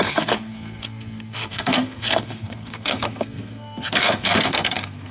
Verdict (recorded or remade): remade